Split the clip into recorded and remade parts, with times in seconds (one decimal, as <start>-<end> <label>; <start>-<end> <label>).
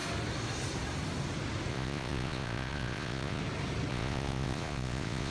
0.0-1.7 recorded; 1.7-3.4 remade; 3.4-3.9 recorded; 3.9-5.3 remade